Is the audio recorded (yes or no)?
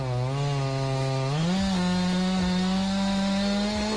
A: yes